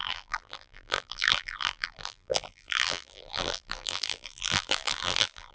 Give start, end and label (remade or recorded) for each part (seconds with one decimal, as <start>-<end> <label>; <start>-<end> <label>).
0.0-5.5 remade